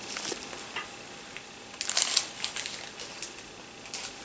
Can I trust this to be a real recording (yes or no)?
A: yes